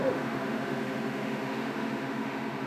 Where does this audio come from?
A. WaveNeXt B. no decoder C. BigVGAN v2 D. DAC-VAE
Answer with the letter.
D